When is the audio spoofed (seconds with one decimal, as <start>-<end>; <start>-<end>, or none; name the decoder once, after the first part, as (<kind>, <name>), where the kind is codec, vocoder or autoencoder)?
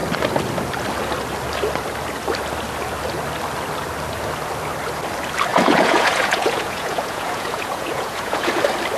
5.5-8.6 (vocoder, Vocos)